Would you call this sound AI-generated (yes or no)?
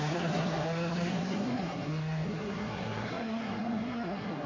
yes